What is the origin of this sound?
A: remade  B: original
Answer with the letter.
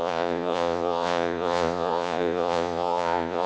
A